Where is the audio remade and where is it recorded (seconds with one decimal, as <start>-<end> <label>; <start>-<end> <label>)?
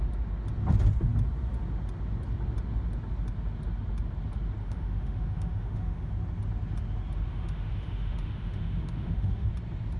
0.0-4.6 recorded; 4.6-6.1 remade; 6.1-7.3 recorded; 7.3-9.5 remade; 9.5-10.0 recorded